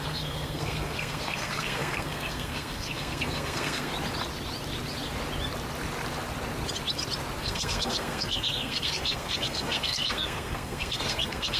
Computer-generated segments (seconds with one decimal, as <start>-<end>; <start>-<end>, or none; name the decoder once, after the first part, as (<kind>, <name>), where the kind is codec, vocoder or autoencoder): 0.0-3.9 (codec, SNAC); 7.4-11.6